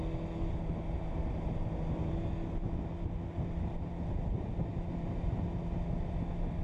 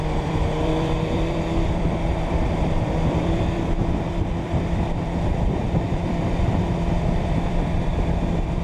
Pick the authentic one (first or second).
first